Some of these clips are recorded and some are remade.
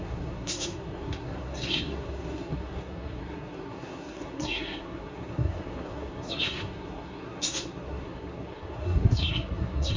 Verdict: remade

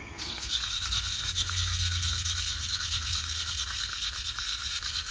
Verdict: remade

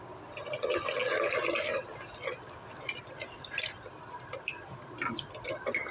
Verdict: recorded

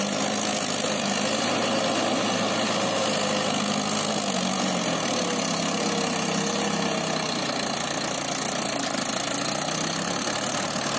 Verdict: recorded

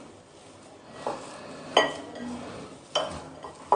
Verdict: recorded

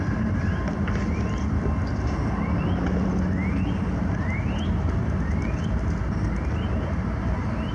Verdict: recorded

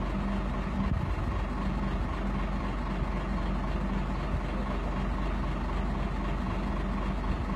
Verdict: recorded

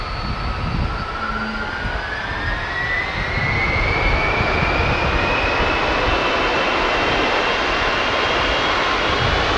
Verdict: recorded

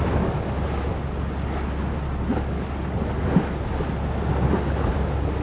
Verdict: recorded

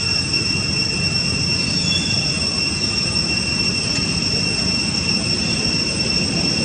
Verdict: recorded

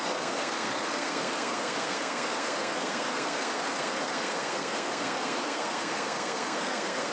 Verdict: remade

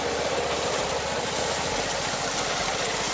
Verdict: recorded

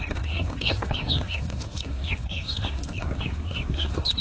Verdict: remade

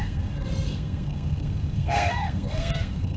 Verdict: remade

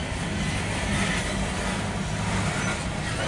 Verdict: recorded